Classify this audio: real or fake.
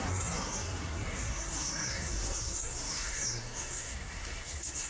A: fake